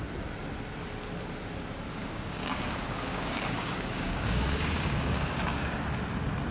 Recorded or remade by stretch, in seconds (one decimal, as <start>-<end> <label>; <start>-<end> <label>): 0.0-1.9 recorded; 1.9-5.8 remade; 5.8-6.5 recorded